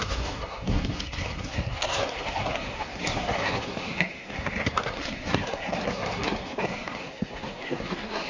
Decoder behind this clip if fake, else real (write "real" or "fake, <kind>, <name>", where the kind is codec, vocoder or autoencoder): fake, codec, SNAC